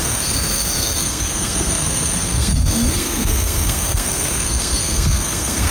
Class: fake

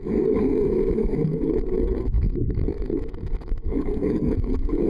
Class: fake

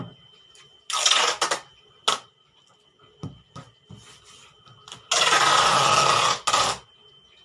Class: real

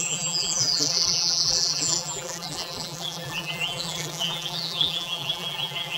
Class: fake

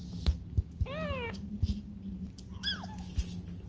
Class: real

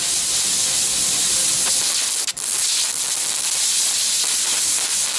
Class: real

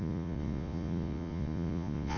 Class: fake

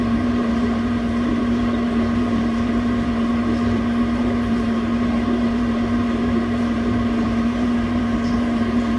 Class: fake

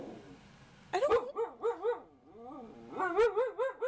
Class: real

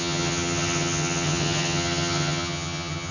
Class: fake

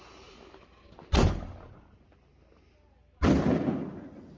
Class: real